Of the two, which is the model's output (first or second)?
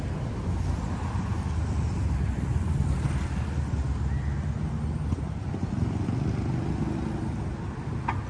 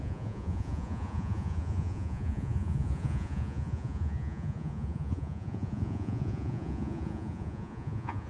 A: second